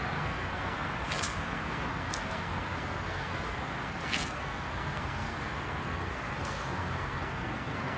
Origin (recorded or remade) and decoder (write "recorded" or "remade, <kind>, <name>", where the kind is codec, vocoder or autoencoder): remade, codec, SNAC